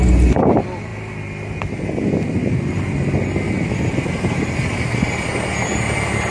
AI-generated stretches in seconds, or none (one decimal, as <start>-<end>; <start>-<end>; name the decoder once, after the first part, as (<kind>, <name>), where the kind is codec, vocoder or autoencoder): none